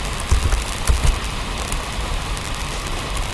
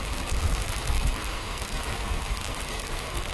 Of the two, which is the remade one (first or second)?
second